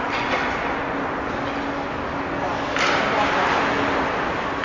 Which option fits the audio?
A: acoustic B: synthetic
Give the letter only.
A